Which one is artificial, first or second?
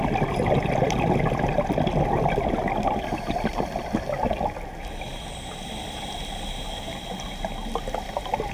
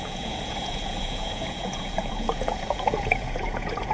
second